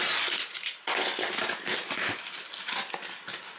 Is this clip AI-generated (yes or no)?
no